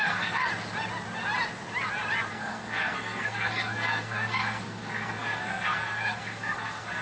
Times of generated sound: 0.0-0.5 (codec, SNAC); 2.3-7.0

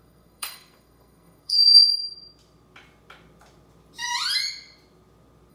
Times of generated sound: 0.0-1.9 (codec, SNAC)

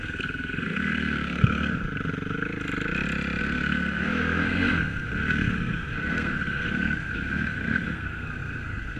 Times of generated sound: 0.0-1.8 (codec, SNAC); 3.4-9.0

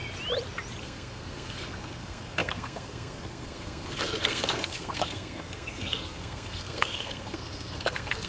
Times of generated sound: 0.8-8.3 (codec, SNAC)

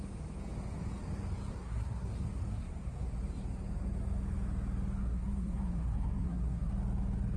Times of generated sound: 1.5-2.1 (codec, SNAC); 2.5-3.1; 5.0-6.7

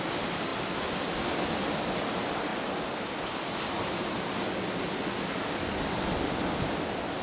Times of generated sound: none